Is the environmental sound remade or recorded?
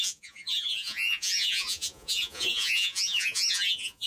remade